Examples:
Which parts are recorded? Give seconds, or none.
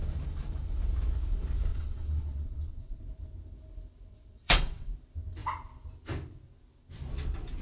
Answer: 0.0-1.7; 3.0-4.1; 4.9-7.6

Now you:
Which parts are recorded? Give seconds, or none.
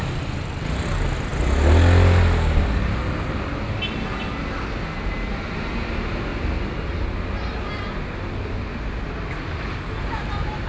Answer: 0.0-10.7